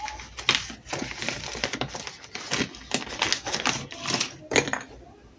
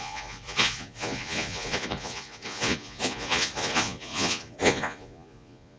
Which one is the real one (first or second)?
first